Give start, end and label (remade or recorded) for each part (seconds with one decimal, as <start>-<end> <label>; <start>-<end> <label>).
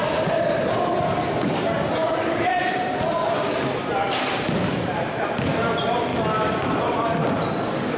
0.0-2.1 recorded; 2.1-2.7 remade; 2.7-8.0 recorded